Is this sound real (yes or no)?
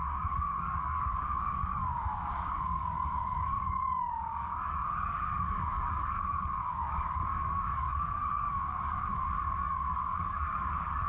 no